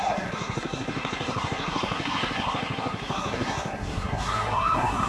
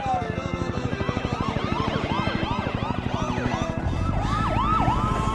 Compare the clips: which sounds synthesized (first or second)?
first